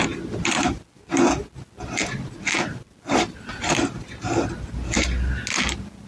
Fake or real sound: real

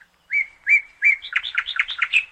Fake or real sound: fake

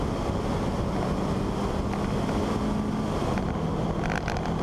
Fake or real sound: real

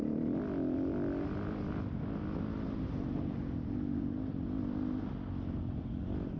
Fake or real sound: real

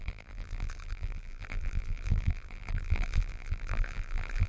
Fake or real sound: fake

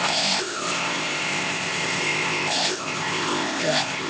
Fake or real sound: fake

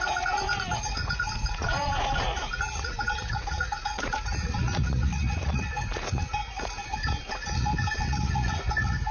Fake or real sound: fake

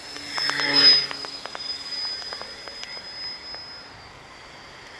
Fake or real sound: real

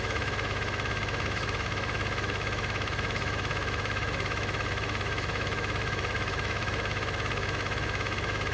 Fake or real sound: fake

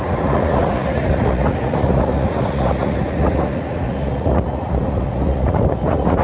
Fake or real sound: fake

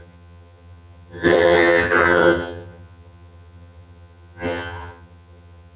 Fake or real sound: fake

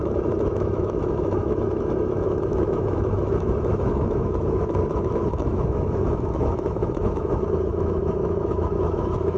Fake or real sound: fake